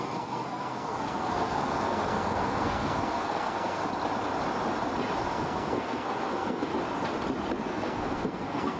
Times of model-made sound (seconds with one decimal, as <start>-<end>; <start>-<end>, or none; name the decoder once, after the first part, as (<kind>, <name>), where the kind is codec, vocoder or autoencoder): 0.0-3.8 (codec, SNAC); 5.3-6.7; 7.6-8.8